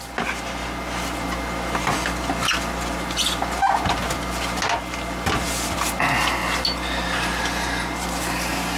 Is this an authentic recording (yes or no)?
yes